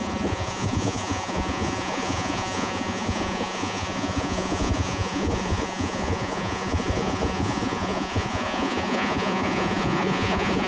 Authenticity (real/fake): fake